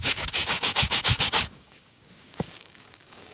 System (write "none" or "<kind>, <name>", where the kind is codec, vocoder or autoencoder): codec, DAC